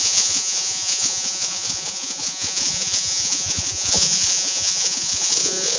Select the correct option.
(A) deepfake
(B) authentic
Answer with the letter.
A